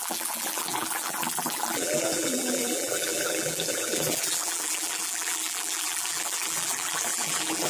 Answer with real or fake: fake